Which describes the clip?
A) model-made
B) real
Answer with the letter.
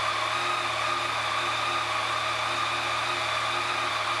B